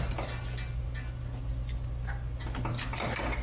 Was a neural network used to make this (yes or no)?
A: no